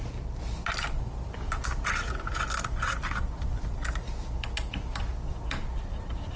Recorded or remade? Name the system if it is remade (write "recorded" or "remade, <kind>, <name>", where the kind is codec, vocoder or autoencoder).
remade, vocoder, BigVGAN v2